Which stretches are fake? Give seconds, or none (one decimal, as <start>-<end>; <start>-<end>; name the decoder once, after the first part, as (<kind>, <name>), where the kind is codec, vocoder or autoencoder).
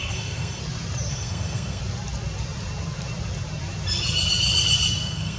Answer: 0.0-0.6 (codec, SNAC); 1.1-1.8; 5.0-5.4